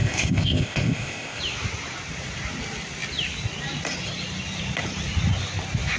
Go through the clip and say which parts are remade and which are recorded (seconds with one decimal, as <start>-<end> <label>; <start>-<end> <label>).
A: 0.0-1.4 remade; 1.4-6.0 recorded